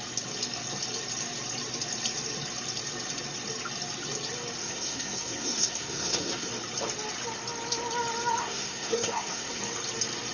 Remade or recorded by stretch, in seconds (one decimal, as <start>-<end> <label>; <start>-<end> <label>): 0.0-4.6 recorded; 4.6-6.5 remade; 6.5-8.4 recorded; 8.4-9.6 remade; 9.6-10.3 recorded